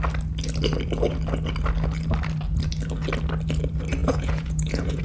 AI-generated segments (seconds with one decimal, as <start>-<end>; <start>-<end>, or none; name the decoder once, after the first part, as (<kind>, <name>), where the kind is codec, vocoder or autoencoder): 4.0-5.0 (vocoder, Vocos)